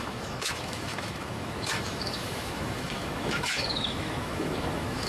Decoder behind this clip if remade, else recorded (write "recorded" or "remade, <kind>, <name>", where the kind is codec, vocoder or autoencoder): remade, autoencoder, DAC-VAE